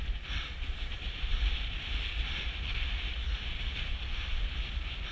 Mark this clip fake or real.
real